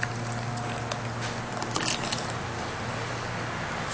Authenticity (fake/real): real